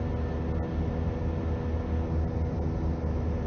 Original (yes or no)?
yes